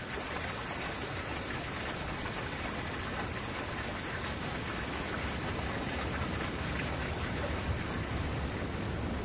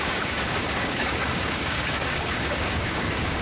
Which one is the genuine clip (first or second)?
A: first